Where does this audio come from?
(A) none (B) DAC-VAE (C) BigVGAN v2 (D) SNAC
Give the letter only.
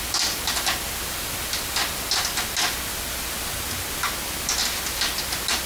A